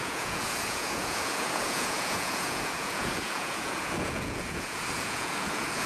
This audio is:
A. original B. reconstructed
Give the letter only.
B